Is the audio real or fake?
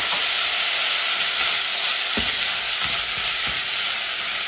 real